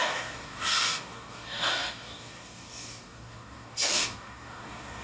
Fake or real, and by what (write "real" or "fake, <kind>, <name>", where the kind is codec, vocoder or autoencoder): fake, codec, DAC